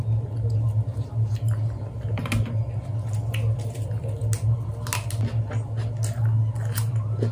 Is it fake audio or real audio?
real